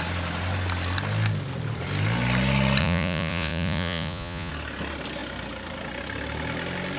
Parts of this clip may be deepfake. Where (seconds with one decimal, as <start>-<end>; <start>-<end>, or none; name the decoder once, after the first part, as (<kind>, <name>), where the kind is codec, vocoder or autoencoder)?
2.8-4.5 (vocoder, Vocos)